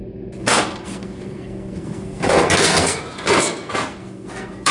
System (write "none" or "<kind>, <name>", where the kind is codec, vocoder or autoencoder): codec, SNAC